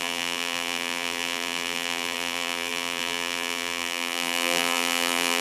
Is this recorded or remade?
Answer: remade